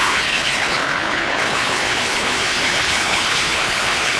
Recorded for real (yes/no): no